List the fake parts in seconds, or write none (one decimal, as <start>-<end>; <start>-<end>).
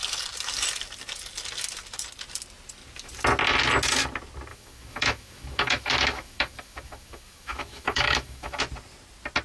4.5-8.6